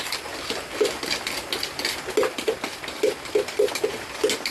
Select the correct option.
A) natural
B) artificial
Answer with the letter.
A